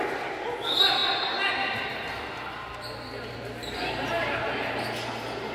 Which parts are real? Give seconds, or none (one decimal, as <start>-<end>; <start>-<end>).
0.0-5.5